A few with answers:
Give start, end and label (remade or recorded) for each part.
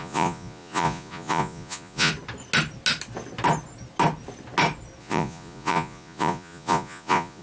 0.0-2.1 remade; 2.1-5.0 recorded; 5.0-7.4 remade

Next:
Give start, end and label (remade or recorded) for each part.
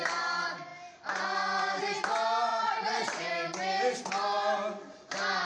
0.0-2.5 recorded; 2.5-3.2 remade; 3.2-5.4 recorded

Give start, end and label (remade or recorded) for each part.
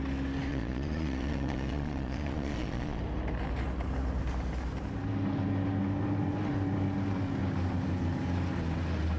0.0-0.5 recorded; 0.5-3.0 remade; 3.0-9.2 recorded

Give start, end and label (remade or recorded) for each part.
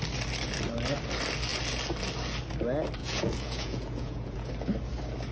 0.0-3.0 recorded; 3.0-4.5 remade; 4.5-5.3 recorded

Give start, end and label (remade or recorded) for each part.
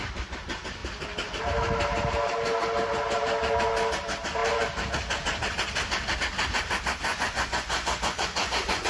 0.0-7.1 recorded; 7.1-8.9 remade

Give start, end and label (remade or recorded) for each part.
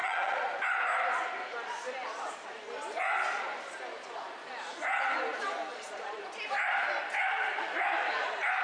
0.0-0.5 remade; 0.5-5.7 recorded; 5.7-6.2 remade; 6.2-8.6 recorded